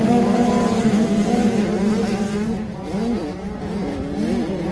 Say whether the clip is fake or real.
real